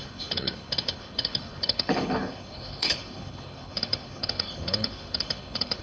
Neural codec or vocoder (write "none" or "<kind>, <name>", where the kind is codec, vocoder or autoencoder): codec, HILCodec